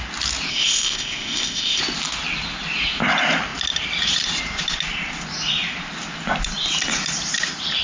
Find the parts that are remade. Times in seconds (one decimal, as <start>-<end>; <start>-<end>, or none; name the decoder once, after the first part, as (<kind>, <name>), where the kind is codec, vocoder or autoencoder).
0.5-1.8 (codec, ZipCodec)